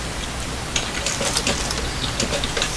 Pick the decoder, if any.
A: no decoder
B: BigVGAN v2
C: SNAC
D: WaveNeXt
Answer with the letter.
A